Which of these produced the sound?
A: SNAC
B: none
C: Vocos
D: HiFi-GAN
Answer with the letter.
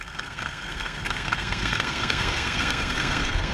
A